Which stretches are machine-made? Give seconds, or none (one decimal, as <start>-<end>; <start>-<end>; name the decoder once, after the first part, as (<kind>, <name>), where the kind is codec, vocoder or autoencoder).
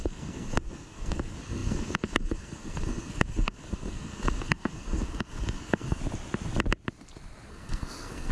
0.0-6.0 (codec, SNAC); 7.5-8.3